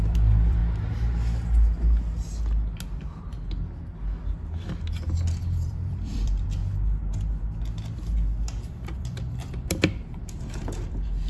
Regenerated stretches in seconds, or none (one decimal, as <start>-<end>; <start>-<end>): 0.0-0.6; 5.4-6.6; 8.6-11.3